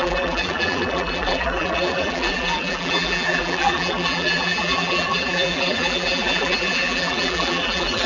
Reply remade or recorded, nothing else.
remade